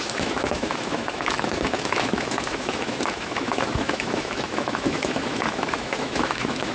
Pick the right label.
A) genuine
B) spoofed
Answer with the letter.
B